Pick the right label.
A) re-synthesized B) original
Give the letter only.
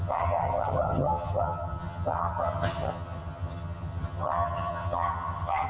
A